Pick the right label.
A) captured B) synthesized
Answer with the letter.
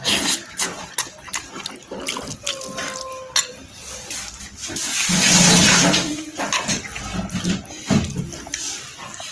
A